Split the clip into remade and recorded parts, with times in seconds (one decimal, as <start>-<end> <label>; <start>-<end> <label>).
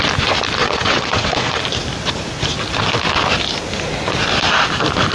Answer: 0.0-0.6 recorded; 0.6-1.6 remade; 1.6-5.1 recorded